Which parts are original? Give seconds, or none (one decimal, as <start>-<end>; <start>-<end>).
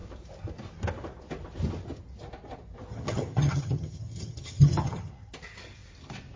0.0-2.9; 5.1-6.4